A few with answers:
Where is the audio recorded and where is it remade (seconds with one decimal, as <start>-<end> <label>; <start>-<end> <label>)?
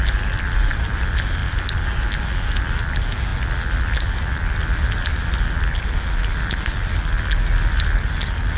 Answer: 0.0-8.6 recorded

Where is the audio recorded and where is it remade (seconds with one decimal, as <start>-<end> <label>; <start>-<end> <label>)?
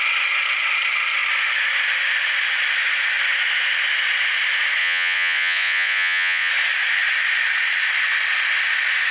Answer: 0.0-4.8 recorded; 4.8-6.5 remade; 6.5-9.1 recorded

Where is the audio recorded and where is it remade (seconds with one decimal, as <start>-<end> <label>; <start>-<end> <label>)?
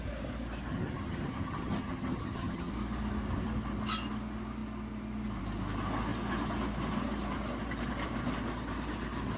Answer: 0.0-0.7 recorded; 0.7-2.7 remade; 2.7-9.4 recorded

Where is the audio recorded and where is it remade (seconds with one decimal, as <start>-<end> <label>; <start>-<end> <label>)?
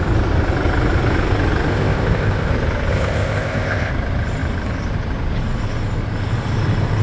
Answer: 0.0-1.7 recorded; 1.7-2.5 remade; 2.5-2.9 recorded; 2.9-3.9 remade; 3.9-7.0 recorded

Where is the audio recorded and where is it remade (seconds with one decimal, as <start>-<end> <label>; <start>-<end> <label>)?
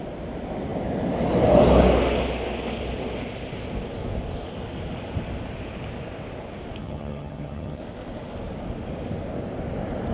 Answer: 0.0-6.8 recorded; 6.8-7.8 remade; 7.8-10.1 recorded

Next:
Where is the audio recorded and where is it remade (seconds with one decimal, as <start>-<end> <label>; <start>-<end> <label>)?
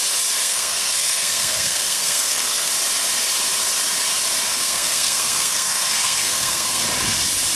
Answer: 0.0-0.4 recorded; 0.4-2.7 remade; 2.7-4.5 recorded; 4.5-6.8 remade; 6.8-7.6 recorded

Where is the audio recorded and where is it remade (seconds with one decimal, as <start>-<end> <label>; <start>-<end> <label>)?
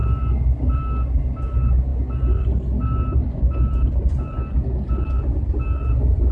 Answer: 0.0-6.3 recorded